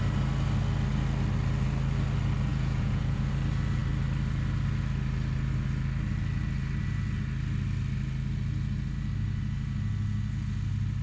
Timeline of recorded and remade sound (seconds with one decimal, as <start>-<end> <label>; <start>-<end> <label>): 0.0-2.5 recorded; 2.5-3.3 remade; 3.3-11.0 recorded